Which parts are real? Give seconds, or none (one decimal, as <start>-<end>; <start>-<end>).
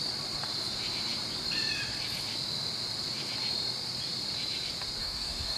0.0-5.0